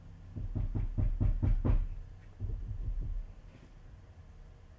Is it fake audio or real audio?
real